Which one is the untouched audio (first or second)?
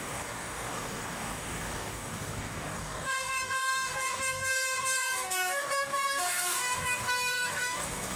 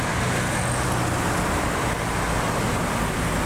second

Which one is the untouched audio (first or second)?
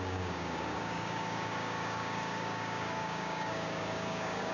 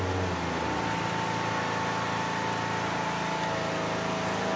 second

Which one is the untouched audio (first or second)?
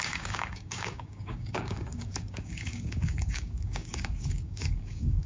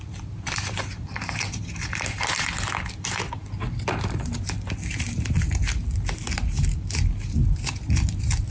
second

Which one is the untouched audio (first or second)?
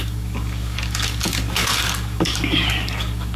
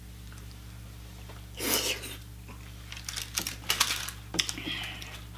second